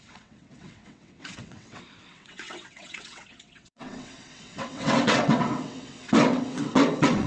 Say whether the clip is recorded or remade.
remade